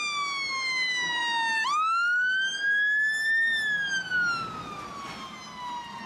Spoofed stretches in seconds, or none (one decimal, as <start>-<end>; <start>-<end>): none